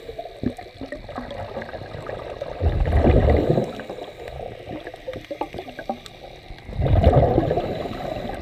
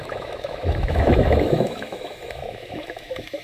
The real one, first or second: first